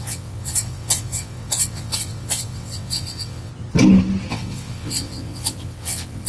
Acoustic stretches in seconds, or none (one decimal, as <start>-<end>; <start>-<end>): 3.5-4.3